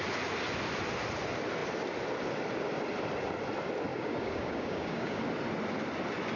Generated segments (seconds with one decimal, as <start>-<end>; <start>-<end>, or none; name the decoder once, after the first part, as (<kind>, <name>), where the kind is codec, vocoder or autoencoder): 3.9-5.2 (codec, DAC)